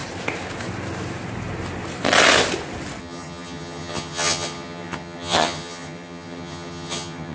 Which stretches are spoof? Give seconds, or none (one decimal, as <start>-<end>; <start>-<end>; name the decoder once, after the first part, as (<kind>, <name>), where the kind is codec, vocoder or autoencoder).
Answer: 3.0-7.3 (vocoder, HiFi-GAN)